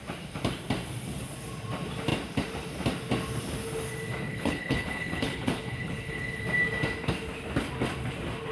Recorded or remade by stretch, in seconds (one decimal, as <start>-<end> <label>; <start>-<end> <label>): 0.0-4.3 recorded; 4.3-6.4 remade; 6.4-8.5 recorded